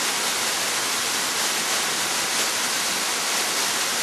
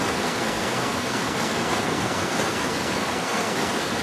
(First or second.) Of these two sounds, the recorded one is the first